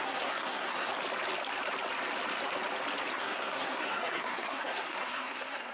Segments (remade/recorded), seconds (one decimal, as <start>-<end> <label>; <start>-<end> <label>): 0.0-0.9 remade; 0.9-3.1 recorded; 3.1-5.7 remade